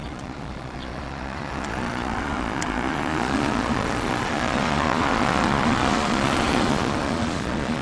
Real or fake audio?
fake